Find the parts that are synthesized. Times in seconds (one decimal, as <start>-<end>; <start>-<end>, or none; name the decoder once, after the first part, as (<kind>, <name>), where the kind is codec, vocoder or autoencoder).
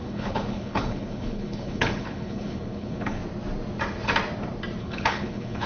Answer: 0.0-3.2 (codec, HILCodec); 4.8-5.7